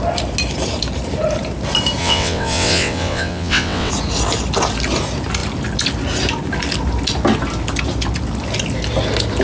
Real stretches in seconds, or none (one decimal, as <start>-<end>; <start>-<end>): 0.0-2.0; 3.9-9.4